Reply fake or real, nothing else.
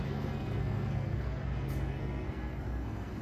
fake